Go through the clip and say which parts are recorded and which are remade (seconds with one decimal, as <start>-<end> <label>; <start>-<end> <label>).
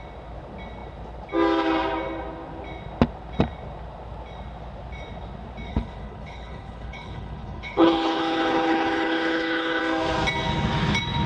0.0-5.7 recorded; 5.7-9.8 remade; 9.8-11.3 recorded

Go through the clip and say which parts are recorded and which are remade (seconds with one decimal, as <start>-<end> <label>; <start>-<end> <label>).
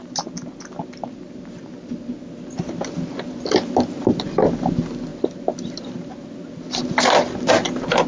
0.0-8.1 recorded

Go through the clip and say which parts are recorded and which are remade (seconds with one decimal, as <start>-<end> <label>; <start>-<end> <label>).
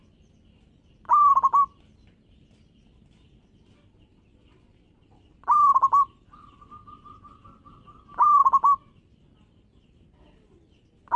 0.0-11.2 recorded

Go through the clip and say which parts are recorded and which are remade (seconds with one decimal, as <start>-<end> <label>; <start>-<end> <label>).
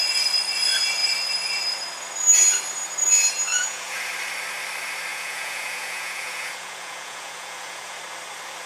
0.0-3.5 recorded; 3.5-4.1 remade; 4.1-5.1 recorded; 5.1-8.0 remade; 8.0-8.7 recorded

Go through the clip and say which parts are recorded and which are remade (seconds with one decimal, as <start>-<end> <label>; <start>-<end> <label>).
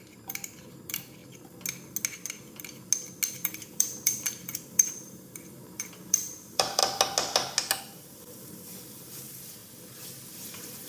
0.0-1.2 remade; 1.2-3.3 recorded; 3.3-6.8 remade; 6.8-7.8 recorded; 7.8-9.6 remade; 9.6-10.3 recorded; 10.3-10.9 remade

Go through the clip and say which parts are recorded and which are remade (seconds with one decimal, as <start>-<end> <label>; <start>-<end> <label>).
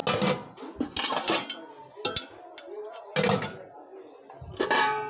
0.0-5.1 recorded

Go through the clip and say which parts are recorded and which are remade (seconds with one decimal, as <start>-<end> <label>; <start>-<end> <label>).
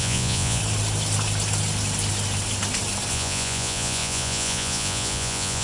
0.0-0.6 remade; 0.6-3.1 recorded; 3.1-5.6 remade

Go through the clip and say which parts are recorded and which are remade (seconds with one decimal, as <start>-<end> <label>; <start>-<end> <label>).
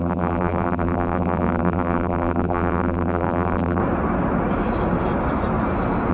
0.0-3.8 remade; 3.8-6.1 recorded